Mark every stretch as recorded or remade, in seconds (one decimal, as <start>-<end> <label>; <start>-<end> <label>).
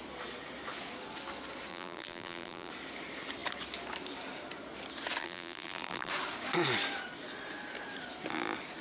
0.0-1.7 recorded; 1.7-2.7 remade; 2.7-5.2 recorded; 5.2-6.1 remade; 6.1-8.8 recorded